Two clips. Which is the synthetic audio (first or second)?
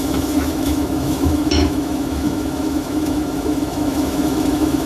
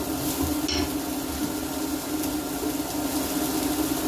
first